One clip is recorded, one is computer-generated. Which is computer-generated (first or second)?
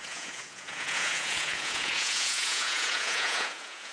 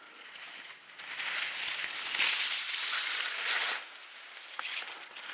first